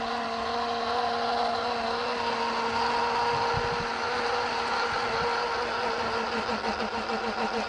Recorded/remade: recorded